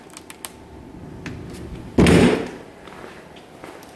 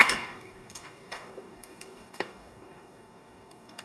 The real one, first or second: first